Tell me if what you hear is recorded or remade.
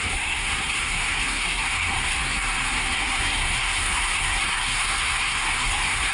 remade